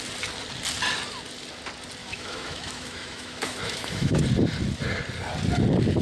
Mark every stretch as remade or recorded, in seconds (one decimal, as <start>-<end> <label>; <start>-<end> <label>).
0.0-2.0 recorded; 2.0-4.2 remade; 4.2-6.0 recorded